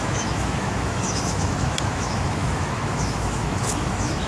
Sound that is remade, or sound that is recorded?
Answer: remade